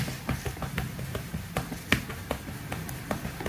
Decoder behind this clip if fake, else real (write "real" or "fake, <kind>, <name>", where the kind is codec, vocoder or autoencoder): real